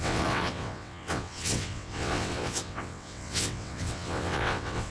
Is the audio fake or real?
fake